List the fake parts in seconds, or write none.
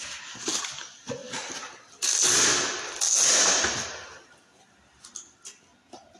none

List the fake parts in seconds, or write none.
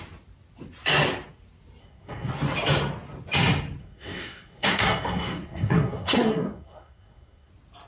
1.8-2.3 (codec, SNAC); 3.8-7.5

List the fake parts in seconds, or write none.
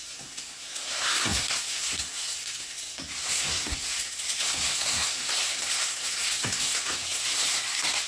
0.0-8.1 (codec, SNAC)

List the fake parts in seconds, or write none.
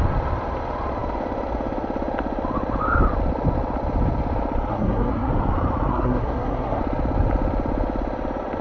4.7-5.3 (codec, SNAC); 5.9-6.8